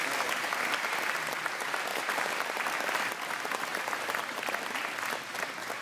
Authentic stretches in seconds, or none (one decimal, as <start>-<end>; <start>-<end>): 0.0-1.9; 2.6-3.7; 4.2-5.8